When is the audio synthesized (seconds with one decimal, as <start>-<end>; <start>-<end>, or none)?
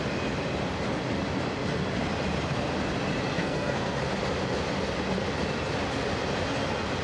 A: 3.3-4.0